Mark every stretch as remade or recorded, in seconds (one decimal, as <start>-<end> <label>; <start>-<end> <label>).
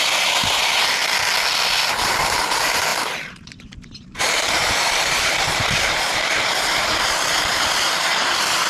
0.0-1.0 remade; 1.0-1.9 recorded; 1.9-8.7 remade